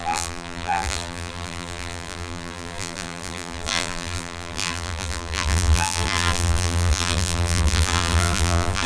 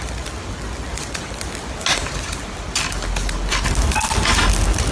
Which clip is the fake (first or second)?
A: first